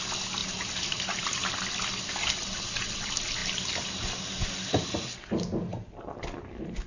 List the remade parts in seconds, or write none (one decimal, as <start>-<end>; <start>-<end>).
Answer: none